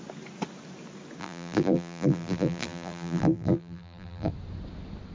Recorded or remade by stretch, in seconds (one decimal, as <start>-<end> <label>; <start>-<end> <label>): 0.0-1.2 recorded; 1.2-4.3 remade; 4.3-5.1 recorded